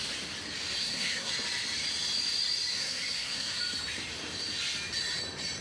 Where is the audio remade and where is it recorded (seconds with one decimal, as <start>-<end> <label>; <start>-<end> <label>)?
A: 0.0-0.8 recorded; 0.8-1.3 remade; 1.3-2.7 recorded; 2.7-3.6 remade; 3.6-5.6 recorded

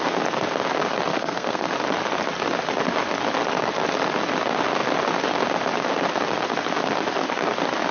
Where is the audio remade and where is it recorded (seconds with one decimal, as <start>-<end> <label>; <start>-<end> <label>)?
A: 0.0-1.1 recorded; 1.1-1.7 remade; 1.7-7.9 recorded

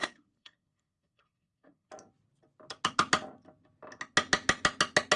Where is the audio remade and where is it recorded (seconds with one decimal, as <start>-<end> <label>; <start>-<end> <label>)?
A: 0.0-1.9 remade; 1.9-5.2 recorded

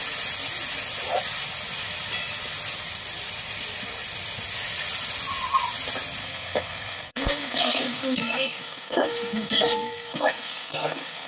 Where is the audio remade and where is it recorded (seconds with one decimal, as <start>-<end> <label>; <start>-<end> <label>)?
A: 0.0-6.2 recorded; 6.2-11.3 remade

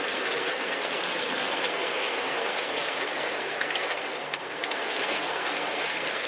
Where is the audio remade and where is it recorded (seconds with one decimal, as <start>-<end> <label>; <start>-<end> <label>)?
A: 0.0-6.3 remade

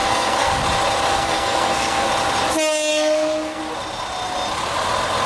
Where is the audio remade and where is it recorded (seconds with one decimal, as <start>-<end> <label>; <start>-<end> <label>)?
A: 0.0-0.6 remade; 0.6-1.1 recorded; 1.1-2.1 remade; 2.1-2.9 recorded; 2.9-3.6 remade; 3.6-5.3 recorded